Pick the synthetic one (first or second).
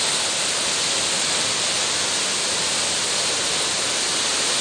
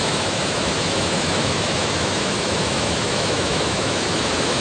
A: second